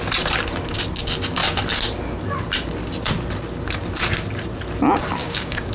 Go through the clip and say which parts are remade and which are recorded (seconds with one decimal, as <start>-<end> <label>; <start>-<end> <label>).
0.0-5.2 recorded; 5.2-5.7 remade